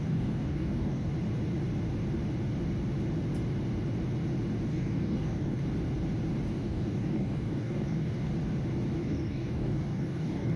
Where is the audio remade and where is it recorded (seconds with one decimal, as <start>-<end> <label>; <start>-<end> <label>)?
0.0-1.1 remade; 1.1-4.7 recorded; 4.7-5.6 remade; 5.6-6.5 recorded; 6.5-8.3 remade; 8.3-9.0 recorded; 9.0-10.6 remade